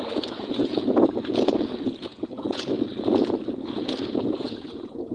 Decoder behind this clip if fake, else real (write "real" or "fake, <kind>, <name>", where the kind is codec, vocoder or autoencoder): fake, vocoder, Vocos